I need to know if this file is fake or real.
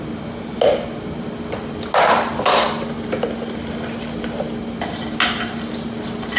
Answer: real